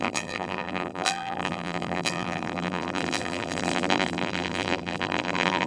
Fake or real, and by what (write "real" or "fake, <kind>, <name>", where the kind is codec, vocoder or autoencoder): fake, vocoder, BigVGAN v2